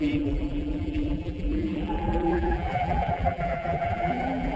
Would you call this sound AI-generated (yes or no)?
yes